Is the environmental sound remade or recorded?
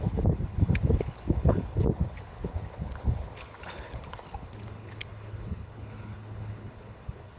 remade